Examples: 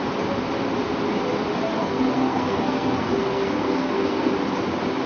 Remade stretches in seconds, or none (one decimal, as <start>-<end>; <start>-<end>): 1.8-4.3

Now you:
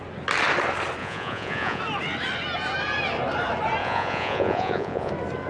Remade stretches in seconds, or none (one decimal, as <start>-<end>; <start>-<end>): 1.0-1.8; 3.8-5.1

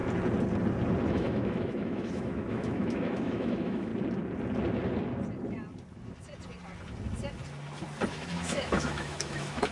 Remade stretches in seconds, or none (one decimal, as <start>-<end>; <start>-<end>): 1.1-3.9; 8.1-9.7